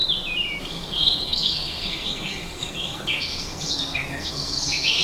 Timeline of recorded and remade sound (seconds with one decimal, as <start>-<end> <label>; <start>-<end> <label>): 0.0-0.6 recorded; 0.6-5.0 remade